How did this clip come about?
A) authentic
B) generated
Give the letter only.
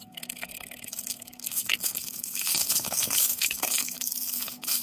B